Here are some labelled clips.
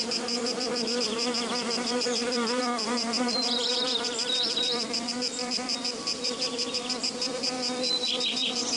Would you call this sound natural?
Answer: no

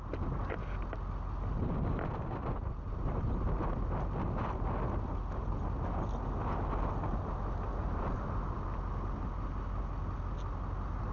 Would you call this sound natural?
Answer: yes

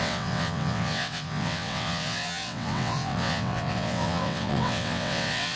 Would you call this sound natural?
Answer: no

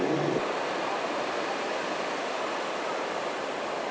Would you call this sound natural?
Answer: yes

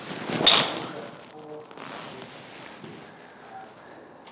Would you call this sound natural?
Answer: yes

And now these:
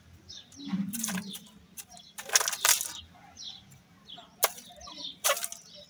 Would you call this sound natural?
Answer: yes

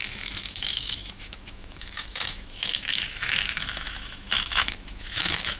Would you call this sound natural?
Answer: no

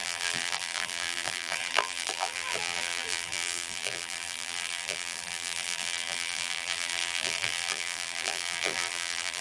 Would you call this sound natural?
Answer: no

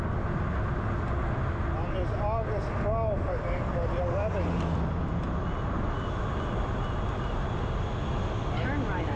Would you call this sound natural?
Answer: yes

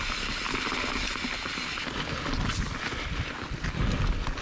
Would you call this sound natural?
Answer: yes